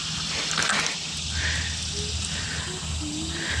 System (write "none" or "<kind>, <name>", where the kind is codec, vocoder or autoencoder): none